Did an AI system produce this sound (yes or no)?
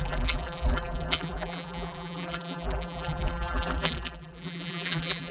yes